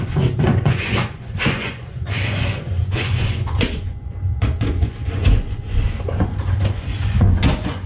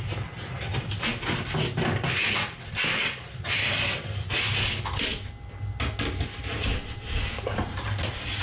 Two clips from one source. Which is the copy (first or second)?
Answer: first